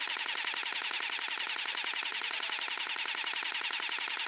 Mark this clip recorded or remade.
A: recorded